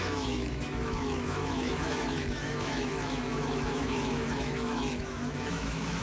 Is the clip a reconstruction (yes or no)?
yes